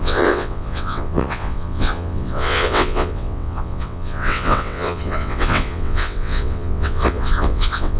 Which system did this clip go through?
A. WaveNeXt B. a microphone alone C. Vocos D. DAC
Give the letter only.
A